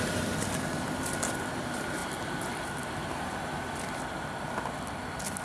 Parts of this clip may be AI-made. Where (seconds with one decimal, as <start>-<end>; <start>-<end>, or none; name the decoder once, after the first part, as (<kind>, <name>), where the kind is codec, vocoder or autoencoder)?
none